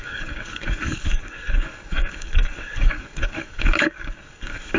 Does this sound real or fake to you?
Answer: fake